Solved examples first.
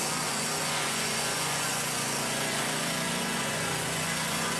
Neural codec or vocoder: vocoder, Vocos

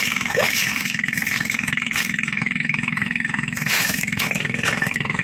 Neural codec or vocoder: autoencoder, DAC-VAE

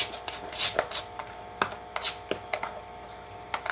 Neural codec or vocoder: none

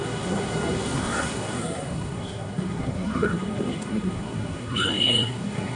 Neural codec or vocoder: codec, SNAC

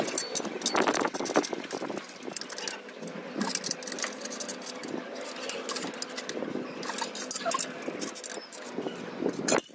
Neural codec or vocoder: none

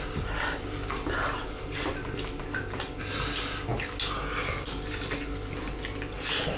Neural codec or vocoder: none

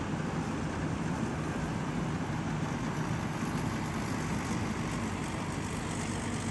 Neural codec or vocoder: none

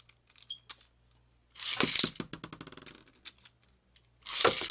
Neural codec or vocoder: none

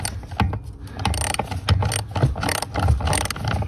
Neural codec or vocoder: none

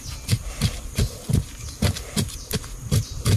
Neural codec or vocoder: none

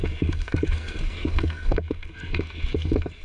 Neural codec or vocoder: codec, SNAC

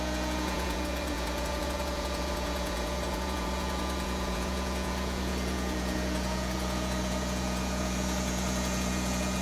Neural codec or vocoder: vocoder, Vocos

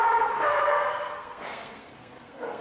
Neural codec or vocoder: codec, SNAC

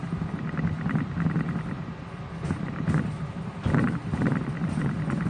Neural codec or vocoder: none